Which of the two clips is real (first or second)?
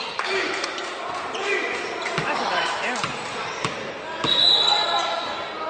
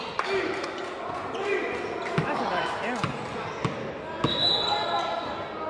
second